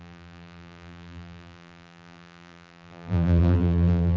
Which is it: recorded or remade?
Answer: remade